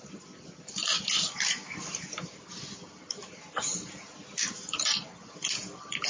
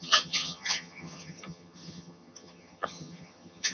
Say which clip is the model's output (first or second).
second